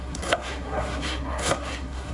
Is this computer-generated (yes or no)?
yes